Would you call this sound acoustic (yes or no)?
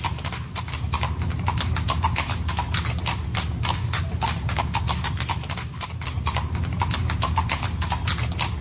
yes